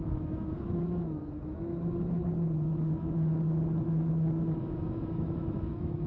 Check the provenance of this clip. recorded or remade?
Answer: remade